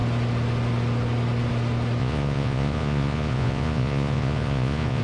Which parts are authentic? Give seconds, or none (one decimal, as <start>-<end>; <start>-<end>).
0.0-2.0